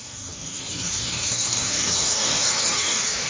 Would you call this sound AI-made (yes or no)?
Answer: yes